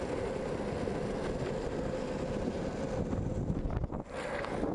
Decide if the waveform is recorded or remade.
recorded